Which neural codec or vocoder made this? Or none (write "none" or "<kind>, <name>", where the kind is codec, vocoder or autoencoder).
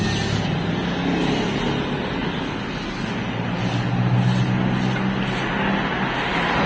none